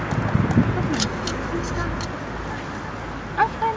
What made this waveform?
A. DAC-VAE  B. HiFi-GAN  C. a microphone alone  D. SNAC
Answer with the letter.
C